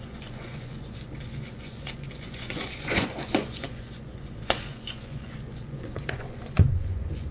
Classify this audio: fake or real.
fake